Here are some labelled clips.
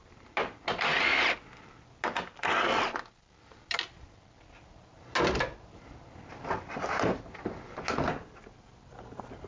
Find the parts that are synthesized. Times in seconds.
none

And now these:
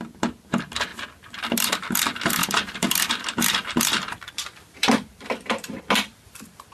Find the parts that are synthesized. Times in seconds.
2.4-5.8 (vocoder, BigVGAN v2)

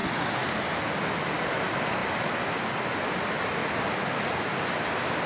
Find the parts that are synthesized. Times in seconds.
none

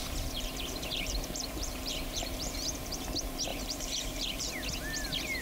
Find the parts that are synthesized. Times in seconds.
0.0-2.9 (vocoder, BigVGAN v2); 3.5-4.5

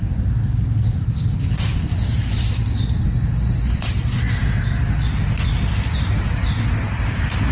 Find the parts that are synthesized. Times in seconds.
none

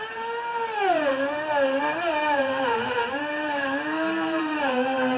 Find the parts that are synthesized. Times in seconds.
0.0-1.1 (vocoder, BigVGAN v2); 1.8-5.2

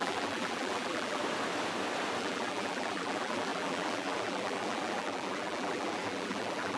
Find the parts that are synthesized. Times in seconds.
0.0-1.2 (vocoder, BigVGAN v2); 2.2-6.8

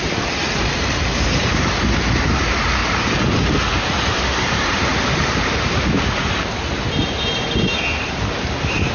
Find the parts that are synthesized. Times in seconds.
0.0-2.8 (vocoder, BigVGAN v2); 4.0-8.9